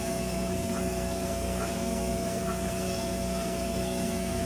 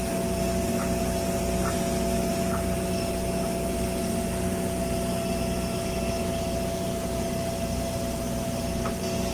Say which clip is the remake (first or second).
first